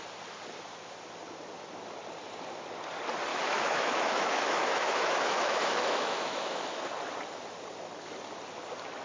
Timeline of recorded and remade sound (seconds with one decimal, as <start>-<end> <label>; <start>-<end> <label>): 0.0-3.3 recorded; 3.3-6.8 remade; 6.8-9.0 recorded

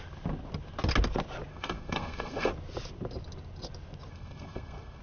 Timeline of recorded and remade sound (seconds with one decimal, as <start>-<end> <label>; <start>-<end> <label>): 0.0-1.5 recorded; 1.5-2.5 remade; 2.5-4.1 recorded; 4.1-5.0 remade

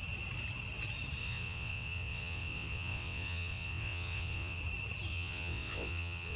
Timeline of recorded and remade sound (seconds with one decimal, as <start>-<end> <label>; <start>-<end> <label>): 0.0-1.2 recorded; 1.2-4.6 remade; 4.6-5.1 recorded; 5.1-6.4 remade